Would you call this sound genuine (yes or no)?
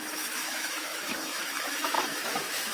no